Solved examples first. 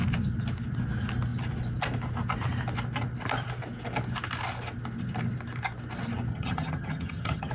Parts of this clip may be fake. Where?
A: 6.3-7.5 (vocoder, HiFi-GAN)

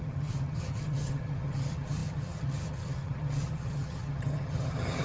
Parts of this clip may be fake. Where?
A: 0.0-5.0 (vocoder, HiFi-GAN)

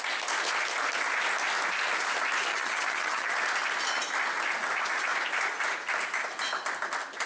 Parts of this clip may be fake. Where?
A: 2.5-3.3 (vocoder, HiFi-GAN)

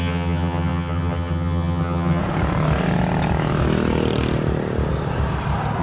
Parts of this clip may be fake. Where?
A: 0.0-2.2 (vocoder, HiFi-GAN)

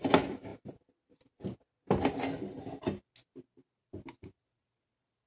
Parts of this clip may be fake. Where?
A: none

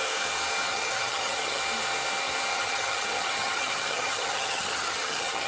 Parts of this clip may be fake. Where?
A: 0.7-1.6 (vocoder, HiFi-GAN); 2.5-5.5

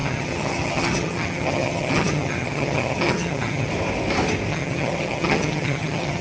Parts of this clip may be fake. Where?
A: 0.0-3.7 (vocoder, HiFi-GAN); 4.5-6.2

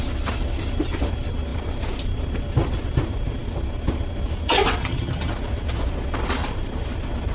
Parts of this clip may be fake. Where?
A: 4.8-5.3 (vocoder, HiFi-GAN)